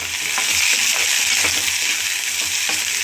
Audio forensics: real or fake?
real